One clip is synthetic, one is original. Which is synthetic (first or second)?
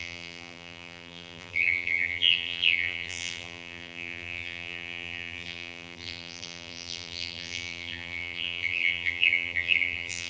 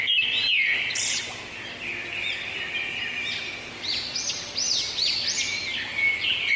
first